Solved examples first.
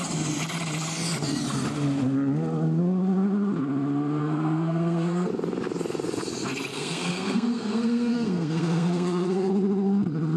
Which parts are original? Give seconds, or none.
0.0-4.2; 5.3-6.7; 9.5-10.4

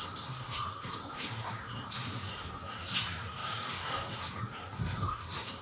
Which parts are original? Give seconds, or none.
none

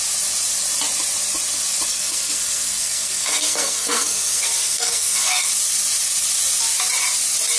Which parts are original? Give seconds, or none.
0.0-1.9; 5.5-7.6